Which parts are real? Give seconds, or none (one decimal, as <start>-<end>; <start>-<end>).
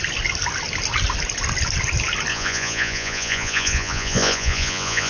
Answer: 0.0-2.3